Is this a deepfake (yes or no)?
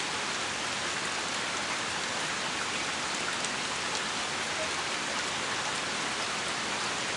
no